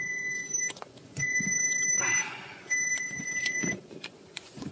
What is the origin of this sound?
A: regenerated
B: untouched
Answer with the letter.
A